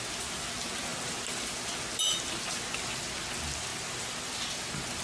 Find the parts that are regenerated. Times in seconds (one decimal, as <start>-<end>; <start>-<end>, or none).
3.7-5.0